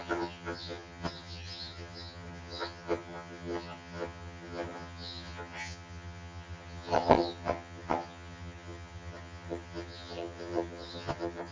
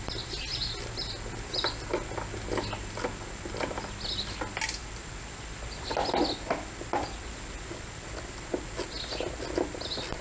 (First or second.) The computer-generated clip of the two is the first